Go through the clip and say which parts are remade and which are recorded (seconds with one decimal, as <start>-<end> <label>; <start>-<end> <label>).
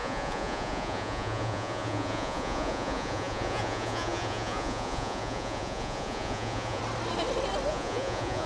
0.0-6.8 remade; 6.8-7.7 recorded; 7.7-8.5 remade